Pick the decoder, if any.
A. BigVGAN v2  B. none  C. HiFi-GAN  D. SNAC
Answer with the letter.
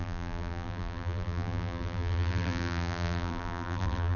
A